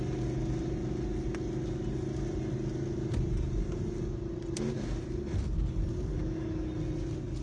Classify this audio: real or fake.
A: real